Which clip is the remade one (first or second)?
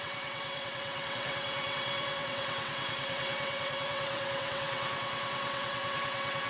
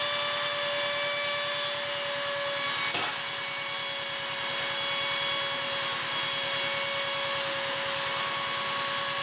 first